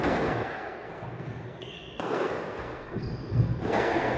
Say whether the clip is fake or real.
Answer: fake